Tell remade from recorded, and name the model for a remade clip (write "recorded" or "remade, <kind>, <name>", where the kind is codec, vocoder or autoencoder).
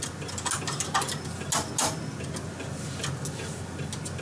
recorded